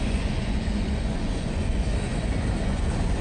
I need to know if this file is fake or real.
fake